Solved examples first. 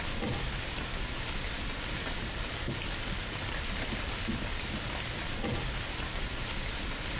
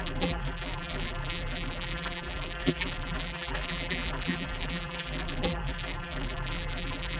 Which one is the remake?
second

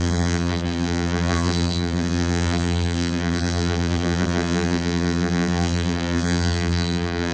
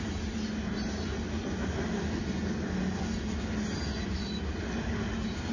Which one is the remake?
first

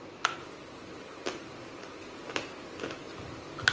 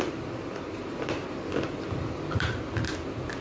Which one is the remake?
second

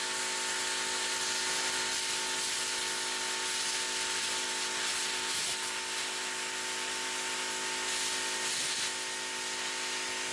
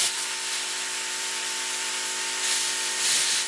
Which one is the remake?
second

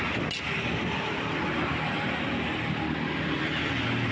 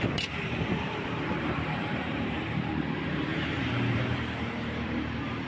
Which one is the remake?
second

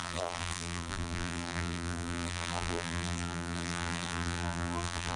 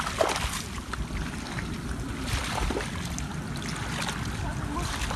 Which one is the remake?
first